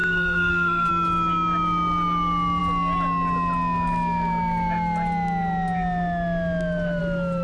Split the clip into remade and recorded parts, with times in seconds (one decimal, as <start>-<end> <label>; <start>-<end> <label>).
0.0-0.9 remade; 0.9-7.4 recorded